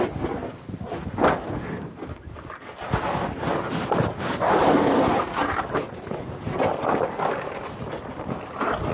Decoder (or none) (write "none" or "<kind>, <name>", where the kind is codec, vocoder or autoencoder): none